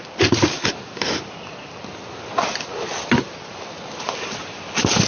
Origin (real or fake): real